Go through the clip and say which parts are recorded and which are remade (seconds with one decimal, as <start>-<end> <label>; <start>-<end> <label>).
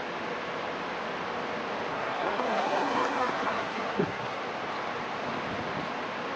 0.0-1.9 recorded; 1.9-4.4 remade; 4.4-6.4 recorded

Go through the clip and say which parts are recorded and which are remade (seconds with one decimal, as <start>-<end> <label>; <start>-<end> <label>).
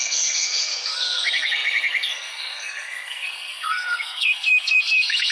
0.0-5.3 remade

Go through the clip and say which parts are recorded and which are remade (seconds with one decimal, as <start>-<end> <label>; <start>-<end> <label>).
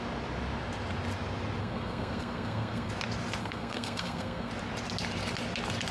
0.0-1.6 recorded; 1.6-2.9 remade; 2.9-3.4 recorded; 3.4-4.5 remade; 4.5-5.9 recorded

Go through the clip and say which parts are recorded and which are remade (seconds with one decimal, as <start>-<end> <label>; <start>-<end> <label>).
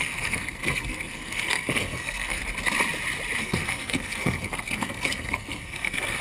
0.0-2.4 remade; 2.4-3.4 recorded; 3.4-6.2 remade